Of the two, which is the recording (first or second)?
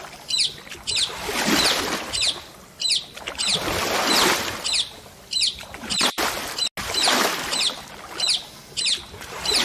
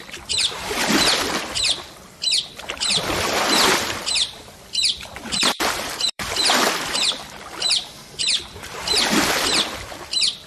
first